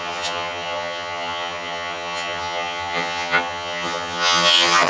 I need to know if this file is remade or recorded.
remade